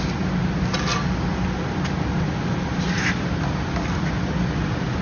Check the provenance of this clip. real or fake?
real